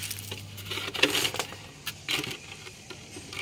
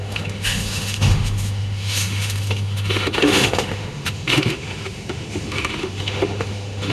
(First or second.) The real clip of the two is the first